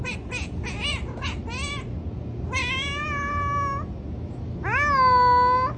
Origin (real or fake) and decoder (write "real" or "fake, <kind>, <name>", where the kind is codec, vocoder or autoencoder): real